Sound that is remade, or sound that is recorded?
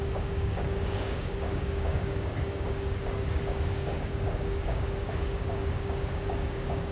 remade